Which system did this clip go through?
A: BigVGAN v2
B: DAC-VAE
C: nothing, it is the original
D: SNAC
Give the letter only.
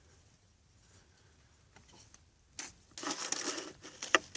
C